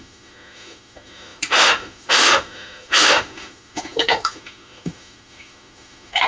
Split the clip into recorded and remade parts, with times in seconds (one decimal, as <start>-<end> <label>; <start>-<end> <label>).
0.0-6.3 remade